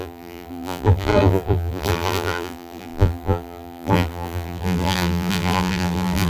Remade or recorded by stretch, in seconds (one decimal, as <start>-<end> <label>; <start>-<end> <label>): 0.0-6.3 remade